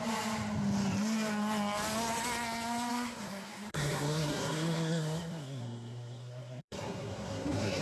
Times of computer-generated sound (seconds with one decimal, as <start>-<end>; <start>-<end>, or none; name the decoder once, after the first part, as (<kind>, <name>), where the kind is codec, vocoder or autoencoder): 2.9-7.8 (codec, SNAC)